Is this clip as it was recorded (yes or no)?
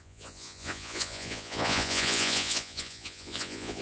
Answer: no